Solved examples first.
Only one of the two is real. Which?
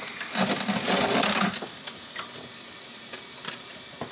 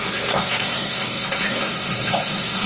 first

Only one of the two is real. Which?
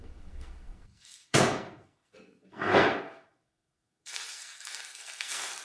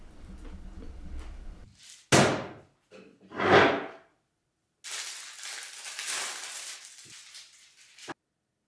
second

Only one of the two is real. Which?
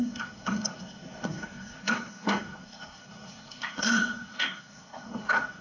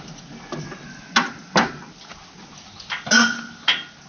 second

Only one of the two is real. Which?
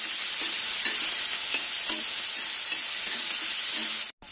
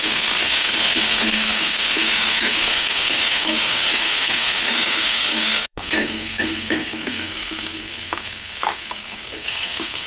first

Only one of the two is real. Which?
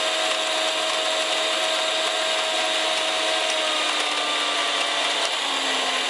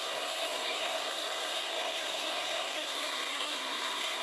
first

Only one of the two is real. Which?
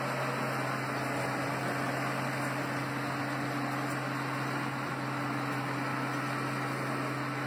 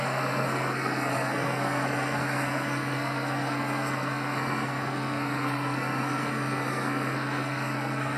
first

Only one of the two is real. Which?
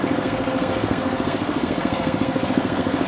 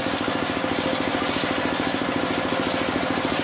second